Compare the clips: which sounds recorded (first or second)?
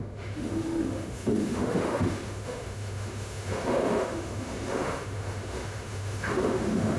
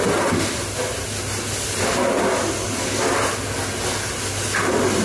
second